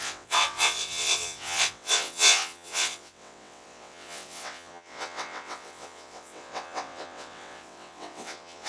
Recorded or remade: remade